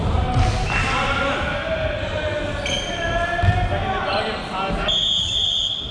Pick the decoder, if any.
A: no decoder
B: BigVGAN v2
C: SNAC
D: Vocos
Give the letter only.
A